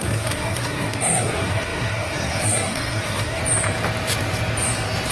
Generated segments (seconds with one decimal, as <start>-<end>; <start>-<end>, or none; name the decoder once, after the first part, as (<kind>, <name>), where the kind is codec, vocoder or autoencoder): 0.0-3.4 (codec, SNAC)